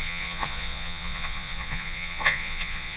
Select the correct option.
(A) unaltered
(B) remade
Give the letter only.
B